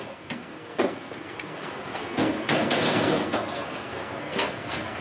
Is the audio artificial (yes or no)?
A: yes